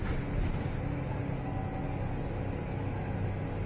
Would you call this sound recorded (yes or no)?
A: yes